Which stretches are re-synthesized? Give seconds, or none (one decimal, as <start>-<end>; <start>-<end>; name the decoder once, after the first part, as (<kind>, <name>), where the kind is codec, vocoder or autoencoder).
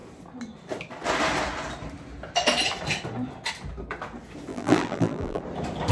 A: 4.5-5.4 (vocoder, BigVGAN v2)